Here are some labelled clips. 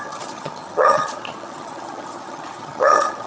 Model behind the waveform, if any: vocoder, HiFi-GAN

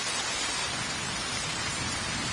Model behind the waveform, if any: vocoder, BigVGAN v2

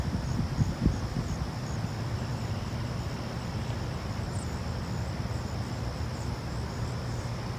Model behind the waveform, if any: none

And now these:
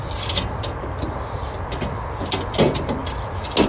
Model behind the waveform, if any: none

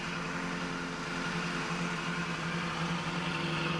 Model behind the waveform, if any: none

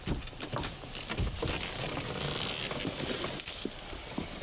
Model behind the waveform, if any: none